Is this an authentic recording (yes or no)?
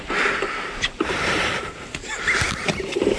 yes